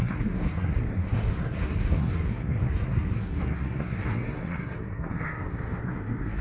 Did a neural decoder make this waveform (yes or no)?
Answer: yes